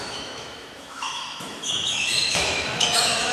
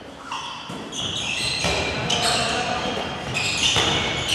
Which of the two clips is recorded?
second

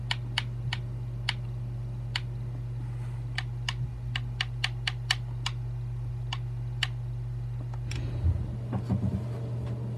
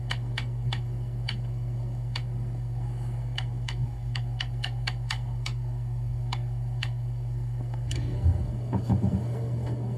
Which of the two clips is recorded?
first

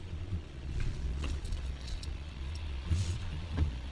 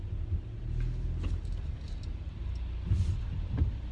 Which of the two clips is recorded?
second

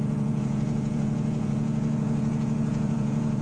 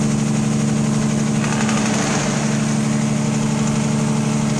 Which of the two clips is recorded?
second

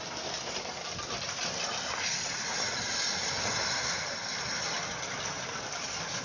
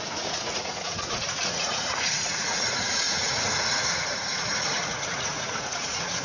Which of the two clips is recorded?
first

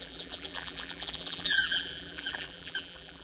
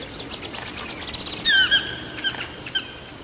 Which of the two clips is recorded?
second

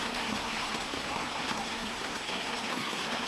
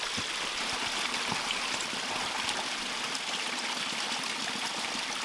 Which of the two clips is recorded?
second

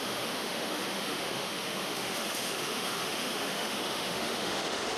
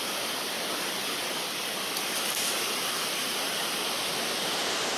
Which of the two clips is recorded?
second